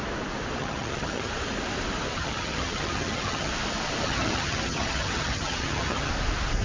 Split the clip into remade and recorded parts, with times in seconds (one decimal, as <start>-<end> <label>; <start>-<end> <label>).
0.0-0.6 recorded; 0.6-1.3 remade; 1.3-2.1 recorded; 2.1-3.5 remade; 3.5-4.0 recorded; 4.0-6.1 remade; 6.1-6.6 recorded